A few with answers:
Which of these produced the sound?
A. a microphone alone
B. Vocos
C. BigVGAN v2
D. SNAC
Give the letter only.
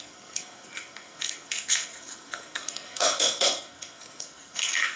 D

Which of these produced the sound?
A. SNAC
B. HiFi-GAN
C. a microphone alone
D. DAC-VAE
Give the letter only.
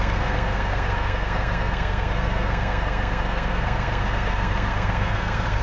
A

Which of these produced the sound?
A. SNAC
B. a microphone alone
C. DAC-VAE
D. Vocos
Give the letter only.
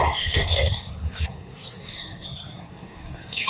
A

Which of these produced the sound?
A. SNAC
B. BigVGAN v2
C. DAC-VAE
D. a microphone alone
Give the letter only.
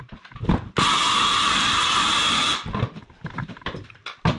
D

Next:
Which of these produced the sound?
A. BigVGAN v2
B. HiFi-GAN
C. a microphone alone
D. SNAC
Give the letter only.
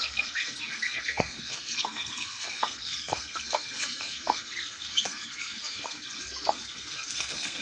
D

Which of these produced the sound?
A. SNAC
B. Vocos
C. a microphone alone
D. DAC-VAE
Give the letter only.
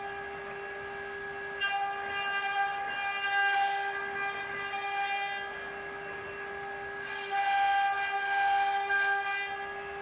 C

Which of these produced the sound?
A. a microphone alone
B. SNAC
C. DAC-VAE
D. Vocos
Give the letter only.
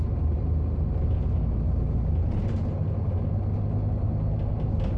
A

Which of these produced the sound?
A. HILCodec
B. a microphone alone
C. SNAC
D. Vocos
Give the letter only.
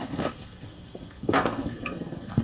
C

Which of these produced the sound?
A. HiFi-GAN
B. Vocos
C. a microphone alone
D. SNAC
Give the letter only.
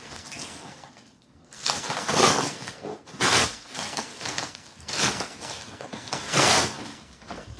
D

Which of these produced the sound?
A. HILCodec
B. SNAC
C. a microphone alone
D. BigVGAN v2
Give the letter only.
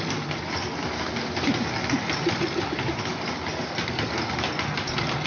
C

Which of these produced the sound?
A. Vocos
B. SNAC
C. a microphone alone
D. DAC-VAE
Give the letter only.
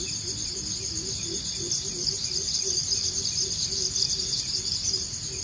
C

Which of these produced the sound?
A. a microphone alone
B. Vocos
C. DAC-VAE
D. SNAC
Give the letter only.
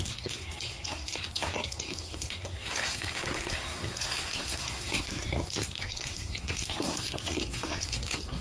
D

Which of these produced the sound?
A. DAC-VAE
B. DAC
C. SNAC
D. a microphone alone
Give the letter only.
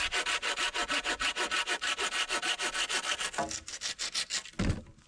D